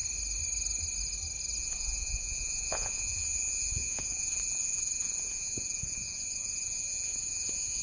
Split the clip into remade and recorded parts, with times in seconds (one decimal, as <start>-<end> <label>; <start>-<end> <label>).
0.0-1.6 recorded; 1.6-7.8 remade